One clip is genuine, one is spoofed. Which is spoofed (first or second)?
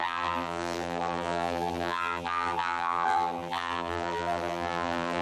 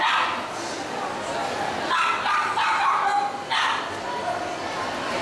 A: first